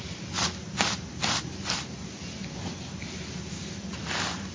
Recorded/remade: recorded